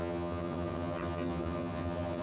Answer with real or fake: fake